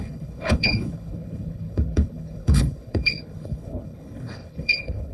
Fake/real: fake